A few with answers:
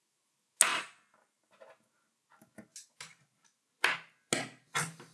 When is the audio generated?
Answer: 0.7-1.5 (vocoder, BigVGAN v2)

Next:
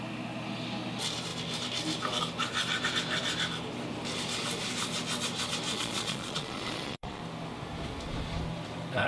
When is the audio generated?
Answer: 5.7-7.2 (vocoder, Vocos)

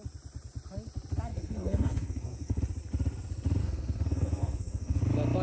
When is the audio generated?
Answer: 1.3-2.6 (codec, SNAC); 3.6-5.0

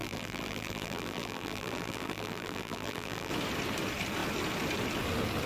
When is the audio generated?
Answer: 0.0-3.3 (vocoder, BigVGAN v2)

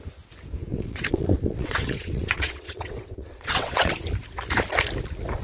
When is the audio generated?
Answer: 0.7-3.9 (vocoder, WaveNeXt)

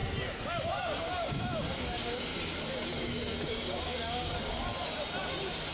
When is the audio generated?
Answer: 0.6-2.3 (codec, DAC); 3.0-4.7

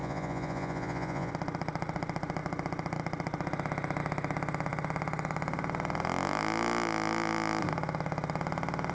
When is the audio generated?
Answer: 0.0-1.3 (vocoder, Vocos)

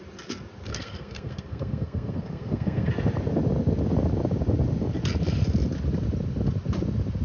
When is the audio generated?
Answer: 0.7-2.9 (codec, SNAC)